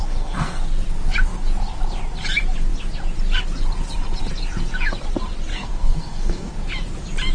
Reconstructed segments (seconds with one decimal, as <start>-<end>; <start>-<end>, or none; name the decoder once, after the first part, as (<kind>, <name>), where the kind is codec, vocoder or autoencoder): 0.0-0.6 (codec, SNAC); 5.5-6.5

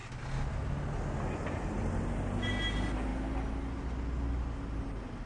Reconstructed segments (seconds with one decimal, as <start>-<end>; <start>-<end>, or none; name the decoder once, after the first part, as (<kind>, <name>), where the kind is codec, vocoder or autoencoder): none

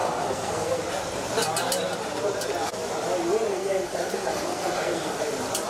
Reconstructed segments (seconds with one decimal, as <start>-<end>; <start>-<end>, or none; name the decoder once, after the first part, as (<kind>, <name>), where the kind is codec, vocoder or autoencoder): 0.0-0.8 (codec, SNAC); 3.5-5.2

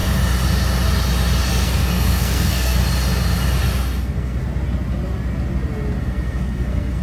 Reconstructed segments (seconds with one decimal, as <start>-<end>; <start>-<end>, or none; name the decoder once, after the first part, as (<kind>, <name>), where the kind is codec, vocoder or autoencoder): 1.5-2.8 (codec, SNAC); 4.0-4.4; 6.0-7.0